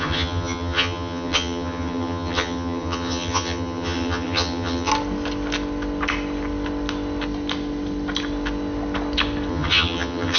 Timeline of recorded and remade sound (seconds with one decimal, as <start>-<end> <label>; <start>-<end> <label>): 0.0-4.9 remade; 4.9-9.5 recorded; 9.5-10.4 remade